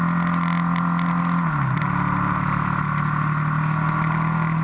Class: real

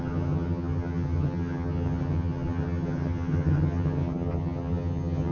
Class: fake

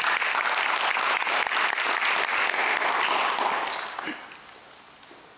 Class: real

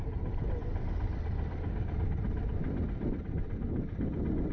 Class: real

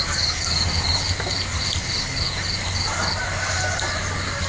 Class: real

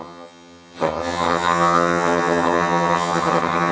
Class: fake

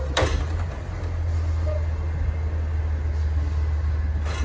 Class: real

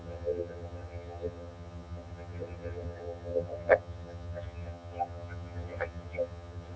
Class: fake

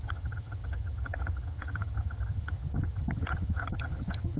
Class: fake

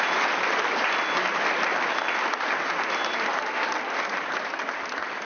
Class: real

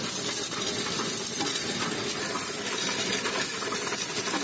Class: real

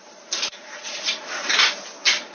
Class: real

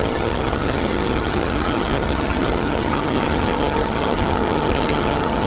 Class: fake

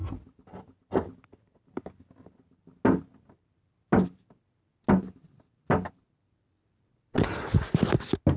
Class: real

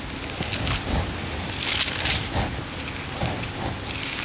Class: real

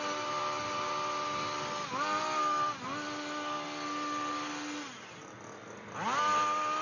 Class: real